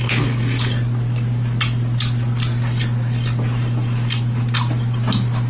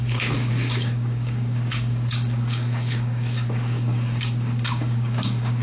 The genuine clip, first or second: first